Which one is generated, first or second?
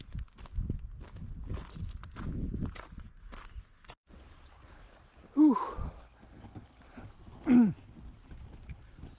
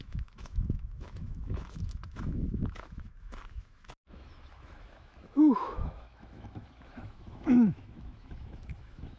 second